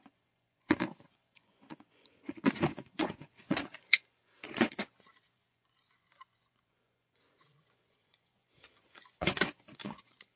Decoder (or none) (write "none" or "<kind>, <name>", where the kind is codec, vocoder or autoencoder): vocoder, Vocos